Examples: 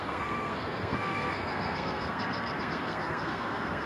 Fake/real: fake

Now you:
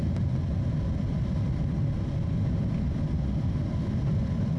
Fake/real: real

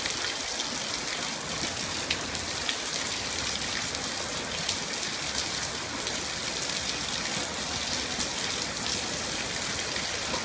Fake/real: real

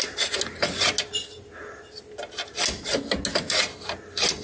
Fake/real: real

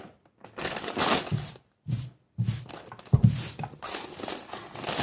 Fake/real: real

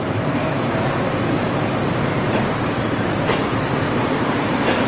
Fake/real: fake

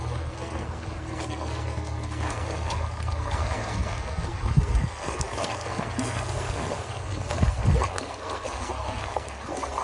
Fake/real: fake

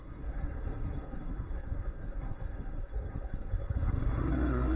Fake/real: fake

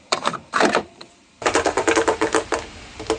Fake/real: fake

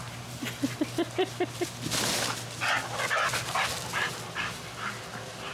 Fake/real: real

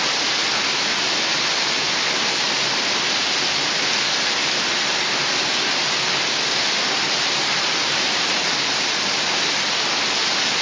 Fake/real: real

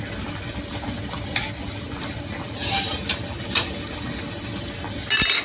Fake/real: real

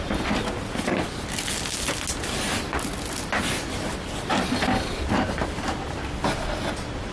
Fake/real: real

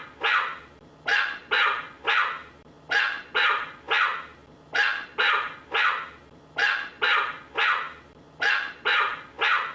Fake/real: fake